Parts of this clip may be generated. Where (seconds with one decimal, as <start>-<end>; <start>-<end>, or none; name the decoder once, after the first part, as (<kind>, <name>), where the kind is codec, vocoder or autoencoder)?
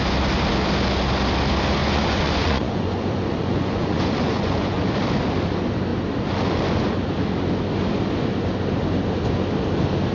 1.8-4.8 (vocoder, Vocos)